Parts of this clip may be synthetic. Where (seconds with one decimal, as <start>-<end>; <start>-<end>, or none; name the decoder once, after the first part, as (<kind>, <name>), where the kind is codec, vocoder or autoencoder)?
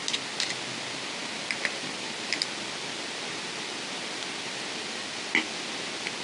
none